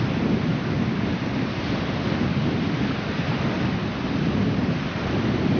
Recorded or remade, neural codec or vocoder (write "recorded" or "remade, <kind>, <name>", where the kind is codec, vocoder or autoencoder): recorded